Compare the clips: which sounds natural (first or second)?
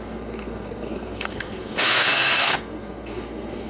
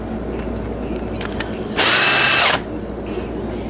second